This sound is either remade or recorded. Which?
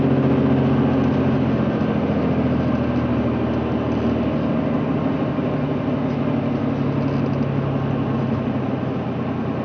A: recorded